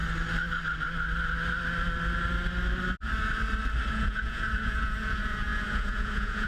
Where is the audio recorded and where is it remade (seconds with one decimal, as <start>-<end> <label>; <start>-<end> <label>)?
0.0-3.9 recorded; 3.9-6.5 remade